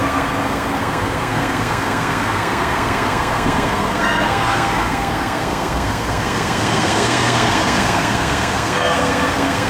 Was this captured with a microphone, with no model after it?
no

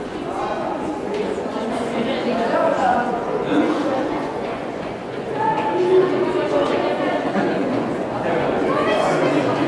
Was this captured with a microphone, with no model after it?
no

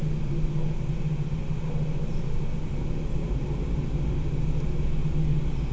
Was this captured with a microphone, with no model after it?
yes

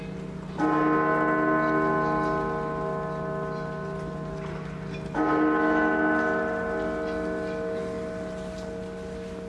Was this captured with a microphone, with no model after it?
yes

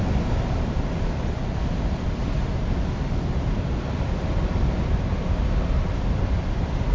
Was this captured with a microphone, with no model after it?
yes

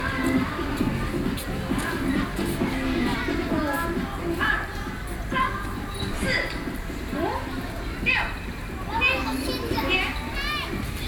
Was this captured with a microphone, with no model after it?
yes